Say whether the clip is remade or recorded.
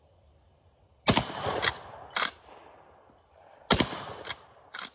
recorded